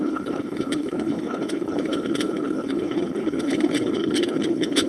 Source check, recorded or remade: remade